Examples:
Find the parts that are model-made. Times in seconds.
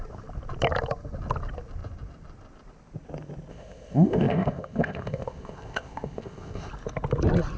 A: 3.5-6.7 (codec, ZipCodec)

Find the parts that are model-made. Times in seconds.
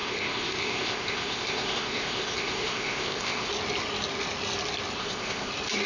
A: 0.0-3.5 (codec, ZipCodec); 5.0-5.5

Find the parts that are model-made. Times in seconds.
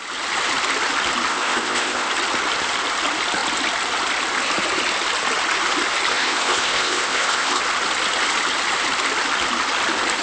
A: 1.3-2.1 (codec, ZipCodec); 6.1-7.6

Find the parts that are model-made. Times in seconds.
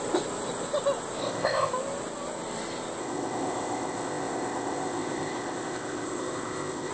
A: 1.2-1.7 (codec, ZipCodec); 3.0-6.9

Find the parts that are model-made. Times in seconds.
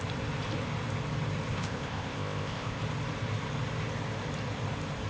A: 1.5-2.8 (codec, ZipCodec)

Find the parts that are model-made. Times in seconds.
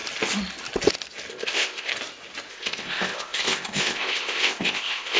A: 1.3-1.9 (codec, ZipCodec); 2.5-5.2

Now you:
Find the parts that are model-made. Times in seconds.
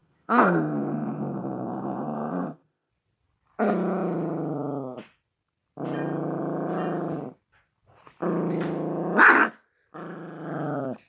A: 0.0-2.9 (codec, ZipCodec)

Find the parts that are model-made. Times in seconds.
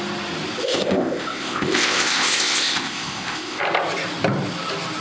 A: 0.6-3.6 (codec, ZipCodec)